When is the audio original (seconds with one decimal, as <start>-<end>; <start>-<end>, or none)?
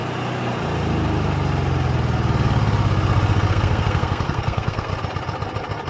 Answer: 0.0-3.5; 4.9-5.9